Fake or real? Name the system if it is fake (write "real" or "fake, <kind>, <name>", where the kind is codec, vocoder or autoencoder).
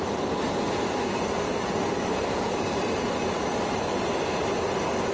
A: real